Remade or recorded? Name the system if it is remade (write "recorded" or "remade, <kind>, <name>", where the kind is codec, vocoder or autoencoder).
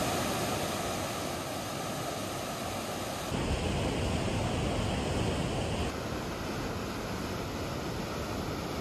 recorded